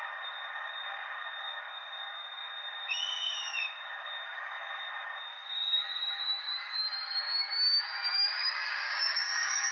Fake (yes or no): yes